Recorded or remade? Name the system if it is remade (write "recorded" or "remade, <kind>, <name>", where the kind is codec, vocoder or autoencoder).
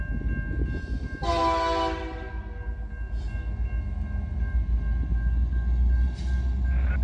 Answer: recorded